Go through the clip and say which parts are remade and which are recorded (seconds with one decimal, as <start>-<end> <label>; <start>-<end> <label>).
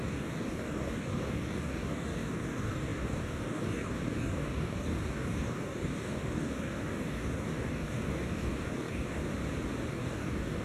0.0-9.2 remade; 9.2-9.9 recorded; 9.9-10.6 remade